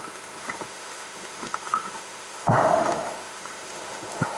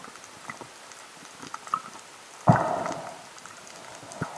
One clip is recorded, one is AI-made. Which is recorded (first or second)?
second